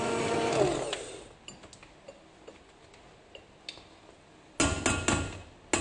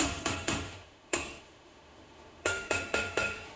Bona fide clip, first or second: first